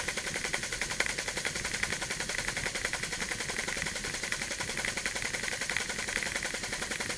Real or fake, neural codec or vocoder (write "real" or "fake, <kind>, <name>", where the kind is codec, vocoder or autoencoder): real